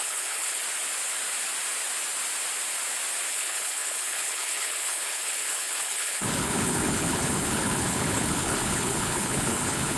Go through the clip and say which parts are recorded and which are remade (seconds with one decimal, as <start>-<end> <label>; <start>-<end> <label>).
0.0-0.6 remade; 0.6-3.3 recorded; 3.3-10.0 remade